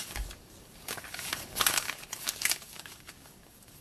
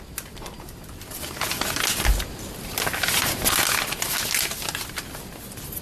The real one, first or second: second